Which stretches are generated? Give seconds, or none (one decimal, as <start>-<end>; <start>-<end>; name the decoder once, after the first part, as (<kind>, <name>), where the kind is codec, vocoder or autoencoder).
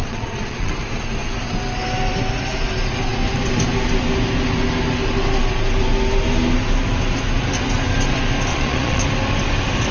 0.0-0.7 (vocoder, Vocos); 8.5-9.0